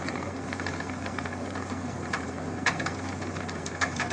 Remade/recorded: remade